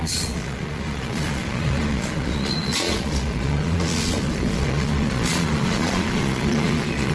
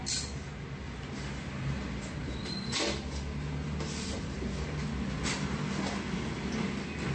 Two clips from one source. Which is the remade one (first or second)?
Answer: first